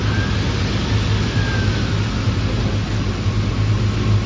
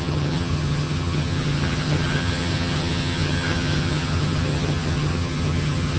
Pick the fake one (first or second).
second